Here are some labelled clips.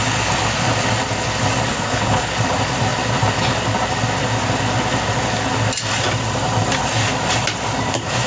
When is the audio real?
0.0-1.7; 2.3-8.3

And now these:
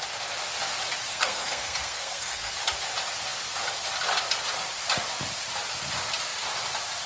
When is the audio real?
0.0-1.1; 2.5-7.1